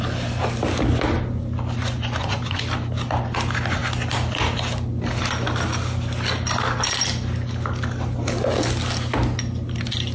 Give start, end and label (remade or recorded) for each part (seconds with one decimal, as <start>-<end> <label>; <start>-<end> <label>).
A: 0.0-1.8 recorded; 1.8-2.6 remade; 2.6-10.1 recorded